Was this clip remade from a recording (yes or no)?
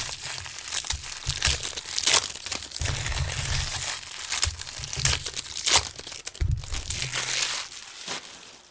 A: no